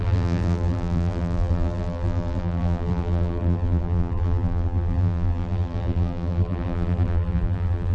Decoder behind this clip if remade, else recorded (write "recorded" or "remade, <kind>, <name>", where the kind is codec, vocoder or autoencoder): remade, vocoder, BigVGAN v2